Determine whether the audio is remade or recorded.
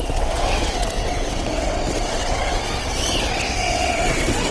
remade